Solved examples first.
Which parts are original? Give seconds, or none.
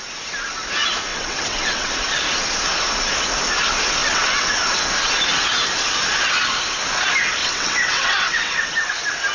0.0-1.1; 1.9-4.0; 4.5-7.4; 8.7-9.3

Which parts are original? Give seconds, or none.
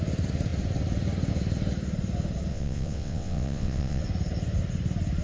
0.0-2.5; 4.0-5.2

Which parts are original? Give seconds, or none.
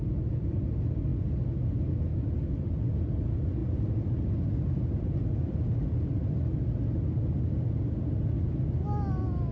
0.0-9.5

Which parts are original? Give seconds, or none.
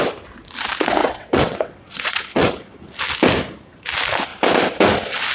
0.0-1.0; 2.5-5.3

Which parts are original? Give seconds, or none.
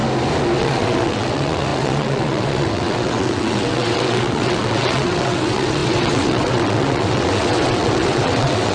0.0-0.6